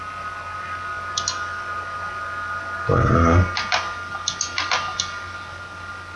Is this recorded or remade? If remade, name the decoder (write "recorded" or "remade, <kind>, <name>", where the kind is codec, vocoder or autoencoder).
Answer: recorded